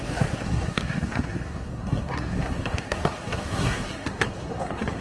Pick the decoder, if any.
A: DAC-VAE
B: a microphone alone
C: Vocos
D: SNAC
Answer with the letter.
D